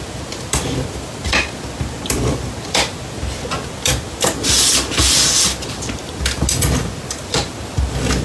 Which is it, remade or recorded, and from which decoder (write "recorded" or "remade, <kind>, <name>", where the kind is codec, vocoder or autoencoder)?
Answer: recorded